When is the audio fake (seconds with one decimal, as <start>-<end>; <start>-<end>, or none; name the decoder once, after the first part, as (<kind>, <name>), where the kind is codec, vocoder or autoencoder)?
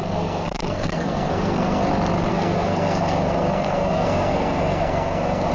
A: 0.0-1.9 (codec, SNAC); 2.3-5.5